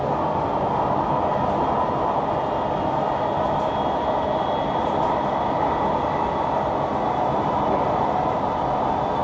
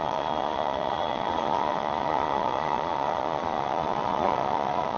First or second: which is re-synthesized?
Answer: second